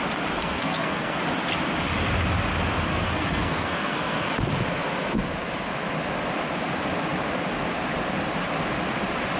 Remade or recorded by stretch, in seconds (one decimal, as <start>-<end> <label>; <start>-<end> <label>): 0.0-0.4 recorded; 0.4-1.2 remade; 1.2-2.9 recorded; 2.9-4.3 remade; 4.3-9.4 recorded